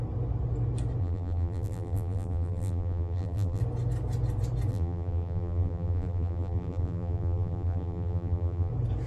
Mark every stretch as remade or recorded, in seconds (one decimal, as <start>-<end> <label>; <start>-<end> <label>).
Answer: 0.0-1.0 recorded; 1.0-3.6 remade; 3.6-4.7 recorded; 4.7-8.7 remade; 8.7-9.1 recorded